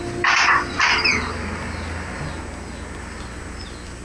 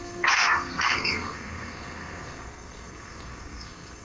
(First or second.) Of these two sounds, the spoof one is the second